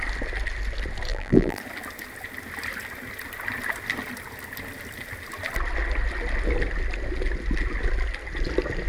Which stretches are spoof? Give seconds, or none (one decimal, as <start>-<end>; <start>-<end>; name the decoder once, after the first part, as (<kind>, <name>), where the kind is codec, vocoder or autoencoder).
1.1-1.6 (vocoder, BigVGAN v2)